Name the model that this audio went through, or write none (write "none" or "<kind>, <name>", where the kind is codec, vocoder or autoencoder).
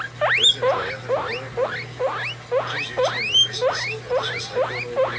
none